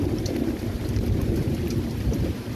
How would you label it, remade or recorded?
recorded